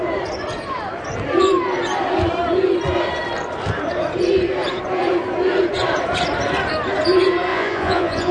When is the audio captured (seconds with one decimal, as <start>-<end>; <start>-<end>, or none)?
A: 0.0-7.5